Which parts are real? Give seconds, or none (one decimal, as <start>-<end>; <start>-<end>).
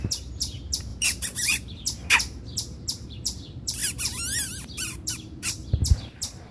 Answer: 3.8-4.5